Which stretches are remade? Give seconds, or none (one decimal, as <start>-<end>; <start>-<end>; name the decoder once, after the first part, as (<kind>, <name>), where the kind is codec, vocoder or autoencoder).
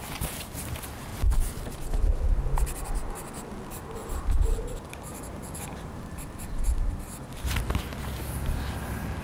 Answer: 4.0-4.6 (vocoder, BigVGAN v2); 5.1-6.6